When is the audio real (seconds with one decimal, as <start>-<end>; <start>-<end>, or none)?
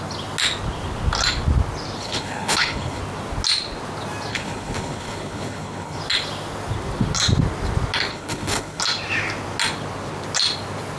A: 0.0-2.0; 3.0-4.3; 6.0-8.1; 8.8-11.0